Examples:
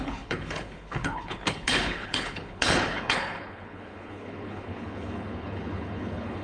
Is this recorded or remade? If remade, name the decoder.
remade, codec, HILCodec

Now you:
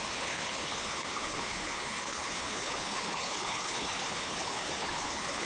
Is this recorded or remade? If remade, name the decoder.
remade, codec, HILCodec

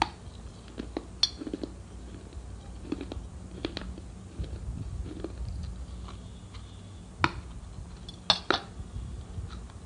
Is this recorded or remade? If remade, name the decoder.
recorded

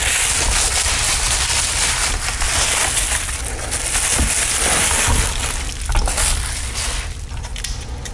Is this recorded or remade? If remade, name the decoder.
recorded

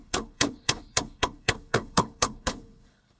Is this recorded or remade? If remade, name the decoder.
remade, codec, HILCodec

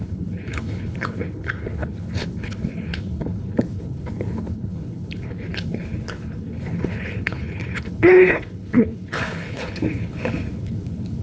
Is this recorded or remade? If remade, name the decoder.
remade, codec, HILCodec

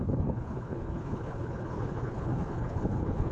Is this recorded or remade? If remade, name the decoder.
remade, codec, HILCodec